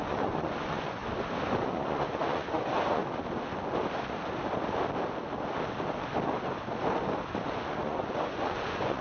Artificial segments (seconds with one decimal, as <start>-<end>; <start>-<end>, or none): 0.0-1.0; 1.6-3.0; 7.4-9.0